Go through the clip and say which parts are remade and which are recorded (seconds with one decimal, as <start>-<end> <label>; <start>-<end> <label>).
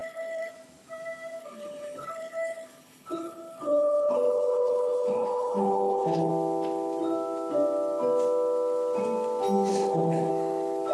0.0-0.5 remade; 0.5-1.4 recorded; 1.4-6.3 remade; 6.3-9.7 recorded; 9.7-10.3 remade; 10.3-10.9 recorded